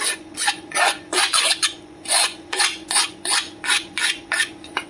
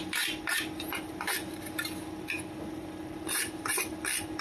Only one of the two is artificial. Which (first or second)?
first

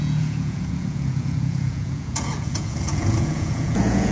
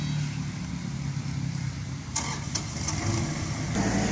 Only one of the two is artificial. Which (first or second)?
first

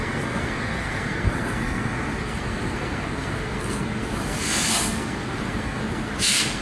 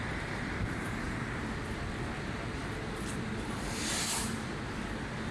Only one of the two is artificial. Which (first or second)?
first